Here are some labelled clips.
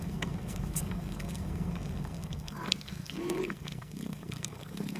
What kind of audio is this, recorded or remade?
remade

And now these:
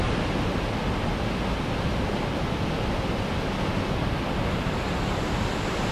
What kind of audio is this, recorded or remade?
recorded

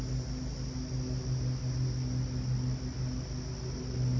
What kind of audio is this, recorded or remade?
recorded